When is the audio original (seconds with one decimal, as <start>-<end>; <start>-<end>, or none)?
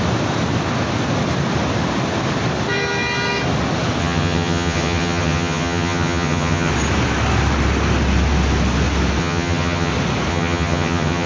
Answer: 0.0-4.0; 6.7-9.2; 9.9-10.3